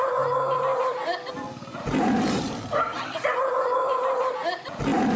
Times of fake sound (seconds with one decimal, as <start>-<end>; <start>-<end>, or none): 1.3-4.3